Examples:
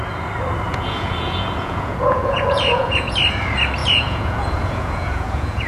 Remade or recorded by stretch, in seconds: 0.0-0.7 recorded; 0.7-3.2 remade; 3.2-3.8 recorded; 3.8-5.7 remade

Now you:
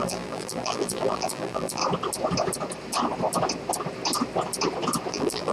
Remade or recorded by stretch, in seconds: 0.0-1.8 remade; 1.8-5.1 recorded; 5.1-5.5 remade

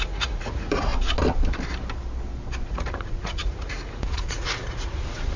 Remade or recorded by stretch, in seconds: 0.0-0.9 remade; 0.9-2.7 recorded; 2.7-5.4 remade

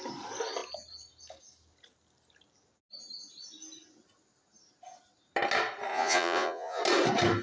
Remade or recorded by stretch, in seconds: 0.0-5.9 recorded; 5.9-6.8 remade; 6.8-7.4 recorded

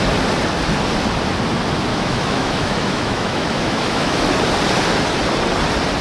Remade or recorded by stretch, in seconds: 0.0-1.9 recorded; 1.9-4.2 remade; 4.2-6.0 recorded

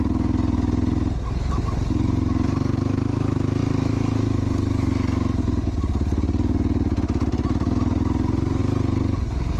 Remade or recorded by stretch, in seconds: 0.0-9.6 recorded

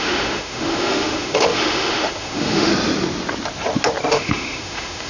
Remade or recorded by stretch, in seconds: 0.0-2.7 remade; 2.7-4.1 recorded; 4.1-5.1 remade

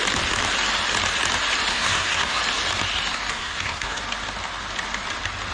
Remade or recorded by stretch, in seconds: 0.0-1.7 recorded; 1.7-2.4 remade; 2.4-3.3 recorded; 3.3-4.0 remade; 4.0-5.5 recorded